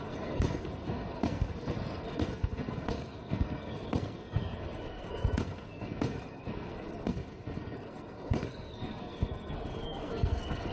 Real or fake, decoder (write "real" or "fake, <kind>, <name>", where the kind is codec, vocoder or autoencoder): fake, codec, SNAC